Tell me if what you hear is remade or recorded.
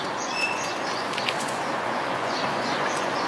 remade